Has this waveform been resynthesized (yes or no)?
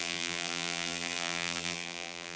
yes